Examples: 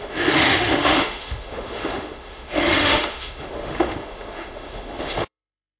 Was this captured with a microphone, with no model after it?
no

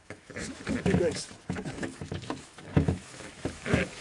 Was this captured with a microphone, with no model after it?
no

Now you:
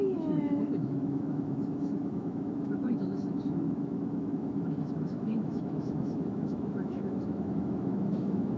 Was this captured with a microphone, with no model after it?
no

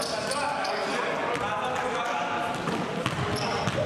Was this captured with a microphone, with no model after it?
yes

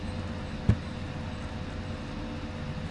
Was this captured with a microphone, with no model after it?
yes